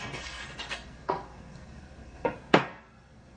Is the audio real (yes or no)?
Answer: no